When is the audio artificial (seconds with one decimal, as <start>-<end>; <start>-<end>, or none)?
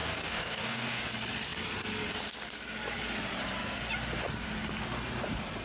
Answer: 0.0-1.0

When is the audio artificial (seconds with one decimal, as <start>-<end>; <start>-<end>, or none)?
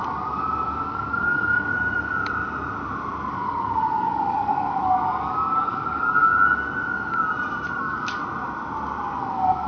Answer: 0.0-1.7; 3.3-6.3; 7.8-8.2; 9.2-9.7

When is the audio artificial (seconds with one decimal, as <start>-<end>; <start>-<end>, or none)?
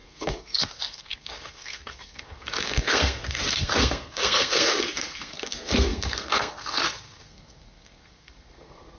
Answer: 0.0-9.0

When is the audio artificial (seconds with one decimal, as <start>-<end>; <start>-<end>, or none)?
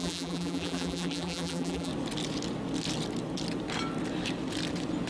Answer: 0.0-1.9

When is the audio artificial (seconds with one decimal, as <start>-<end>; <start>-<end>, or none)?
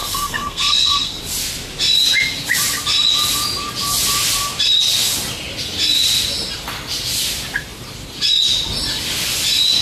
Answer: 0.0-1.2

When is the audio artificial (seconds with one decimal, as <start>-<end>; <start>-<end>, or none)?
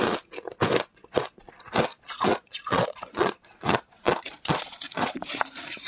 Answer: 1.9-5.4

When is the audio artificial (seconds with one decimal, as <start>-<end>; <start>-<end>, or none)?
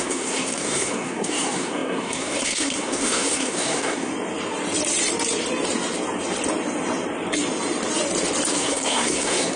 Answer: 0.0-4.1; 8.5-9.6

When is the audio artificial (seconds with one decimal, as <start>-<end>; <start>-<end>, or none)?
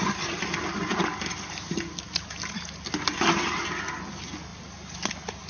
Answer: none